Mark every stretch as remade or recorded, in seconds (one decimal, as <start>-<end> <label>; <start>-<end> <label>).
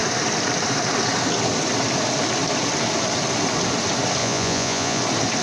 0.0-4.2 recorded; 4.2-5.0 remade; 5.0-5.4 recorded